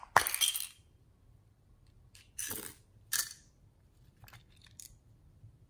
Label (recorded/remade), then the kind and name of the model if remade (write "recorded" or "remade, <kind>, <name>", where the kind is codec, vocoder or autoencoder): remade, vocoder, BigVGAN v2